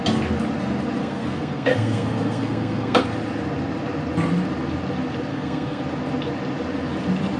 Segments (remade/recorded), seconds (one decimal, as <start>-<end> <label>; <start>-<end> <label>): 0.0-1.0 recorded; 1.0-3.0 remade; 3.0-5.3 recorded; 5.3-5.8 remade; 5.8-7.4 recorded